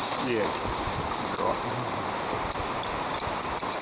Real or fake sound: real